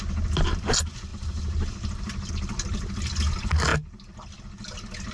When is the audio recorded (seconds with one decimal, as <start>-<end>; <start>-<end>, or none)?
0.0-5.1